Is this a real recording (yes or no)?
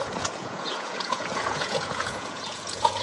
no